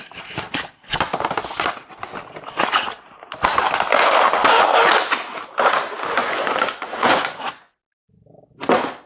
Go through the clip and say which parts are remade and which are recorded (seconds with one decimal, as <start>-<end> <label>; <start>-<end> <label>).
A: 0.0-6.2 recorded; 6.2-7.7 remade; 7.7-9.1 recorded